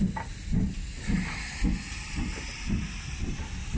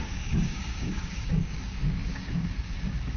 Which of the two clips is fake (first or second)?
second